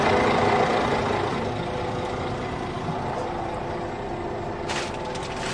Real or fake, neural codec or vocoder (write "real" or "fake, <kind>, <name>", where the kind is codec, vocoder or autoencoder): real